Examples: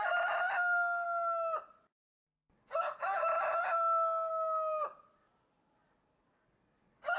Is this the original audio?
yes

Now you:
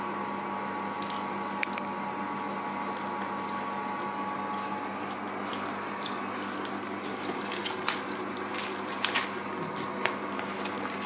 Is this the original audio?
yes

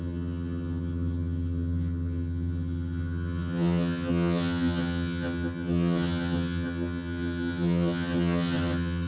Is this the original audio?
no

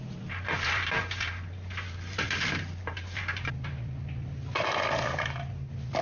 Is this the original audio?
yes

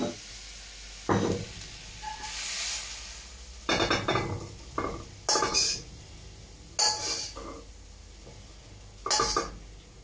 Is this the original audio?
yes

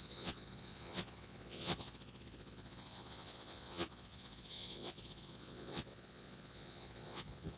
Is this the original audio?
no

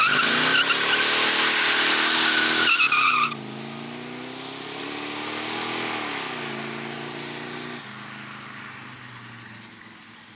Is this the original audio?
yes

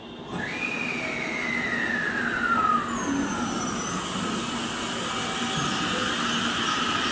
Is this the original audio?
yes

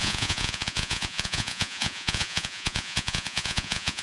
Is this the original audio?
no